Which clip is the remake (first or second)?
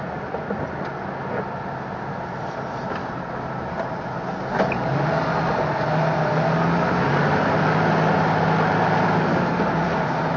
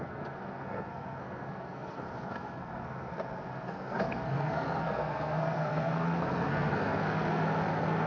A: second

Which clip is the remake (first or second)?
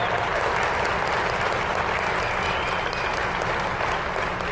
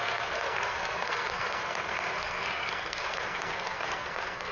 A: second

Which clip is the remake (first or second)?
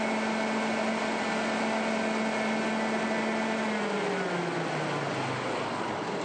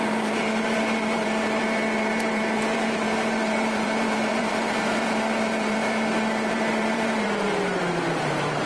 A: second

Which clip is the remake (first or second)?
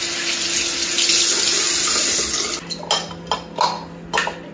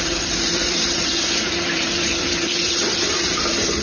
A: second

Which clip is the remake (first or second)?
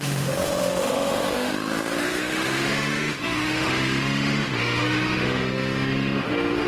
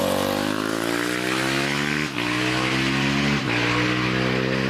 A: first